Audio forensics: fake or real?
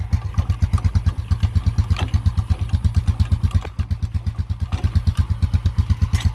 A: real